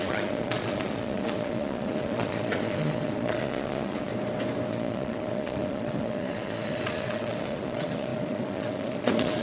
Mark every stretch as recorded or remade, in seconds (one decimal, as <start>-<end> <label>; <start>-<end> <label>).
0.0-4.1 remade; 4.1-4.7 recorded; 4.7-9.4 remade